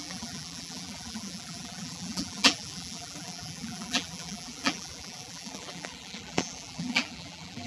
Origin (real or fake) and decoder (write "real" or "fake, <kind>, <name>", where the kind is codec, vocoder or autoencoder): fake, vocoder, BigVGAN v2